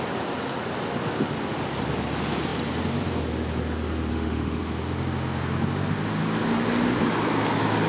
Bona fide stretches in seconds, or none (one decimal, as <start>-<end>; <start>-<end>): 0.0-4.1; 4.6-7.9